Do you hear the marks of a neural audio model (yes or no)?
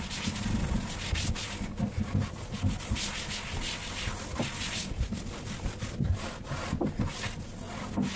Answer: no